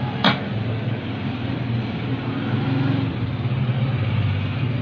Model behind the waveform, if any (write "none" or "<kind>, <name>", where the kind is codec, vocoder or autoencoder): none